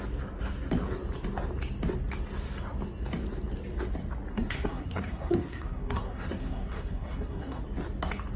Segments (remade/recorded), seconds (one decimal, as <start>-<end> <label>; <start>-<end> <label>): 0.0-4.3 recorded; 4.3-7.6 remade; 7.6-8.4 recorded